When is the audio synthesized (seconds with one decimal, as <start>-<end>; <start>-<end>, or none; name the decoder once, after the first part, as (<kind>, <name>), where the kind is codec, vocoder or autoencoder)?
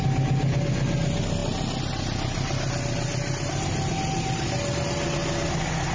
none